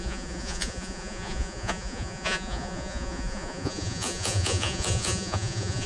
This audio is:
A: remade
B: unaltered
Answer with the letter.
A